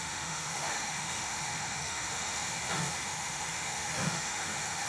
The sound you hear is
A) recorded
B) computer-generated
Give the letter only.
B